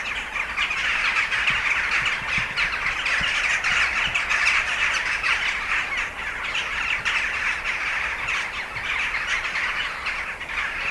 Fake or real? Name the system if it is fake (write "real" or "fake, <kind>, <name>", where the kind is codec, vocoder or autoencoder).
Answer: real